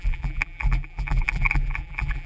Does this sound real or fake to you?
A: fake